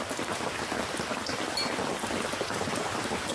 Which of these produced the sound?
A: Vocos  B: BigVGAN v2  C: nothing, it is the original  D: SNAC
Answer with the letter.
C